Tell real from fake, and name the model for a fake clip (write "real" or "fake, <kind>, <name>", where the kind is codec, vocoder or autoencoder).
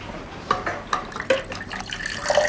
real